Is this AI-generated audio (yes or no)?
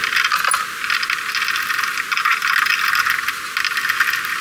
no